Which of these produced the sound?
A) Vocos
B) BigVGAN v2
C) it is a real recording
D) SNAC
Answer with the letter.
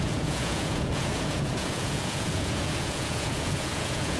A